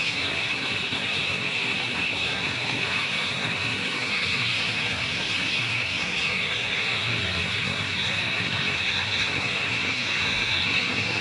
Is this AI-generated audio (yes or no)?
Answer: yes